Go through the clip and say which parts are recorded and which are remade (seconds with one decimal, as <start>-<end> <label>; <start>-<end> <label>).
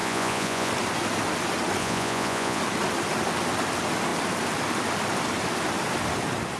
0.0-0.7 remade; 0.7-1.8 recorded; 1.8-2.6 remade; 2.6-6.6 recorded